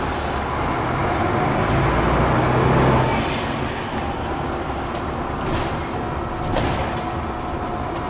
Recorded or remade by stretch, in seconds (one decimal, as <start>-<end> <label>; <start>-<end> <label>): 0.0-8.1 recorded